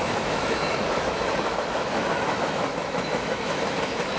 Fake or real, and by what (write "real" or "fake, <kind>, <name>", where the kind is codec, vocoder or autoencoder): fake, autoencoder, DAC-VAE